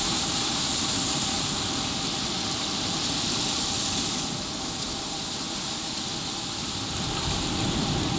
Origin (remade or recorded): recorded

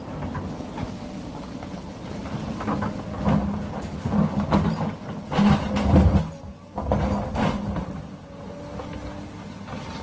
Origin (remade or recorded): recorded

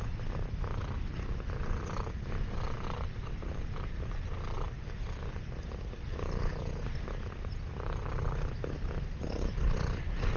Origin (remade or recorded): recorded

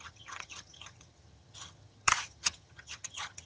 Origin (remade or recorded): remade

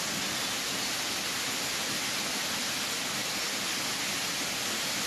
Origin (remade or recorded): recorded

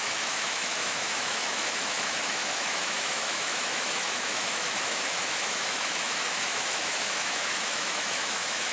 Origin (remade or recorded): remade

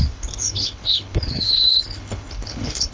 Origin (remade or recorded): remade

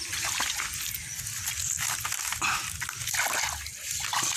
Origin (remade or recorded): recorded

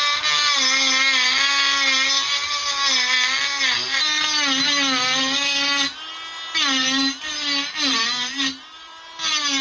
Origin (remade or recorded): recorded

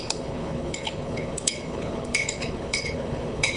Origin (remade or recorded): remade